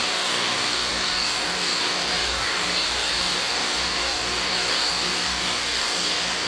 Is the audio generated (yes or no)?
yes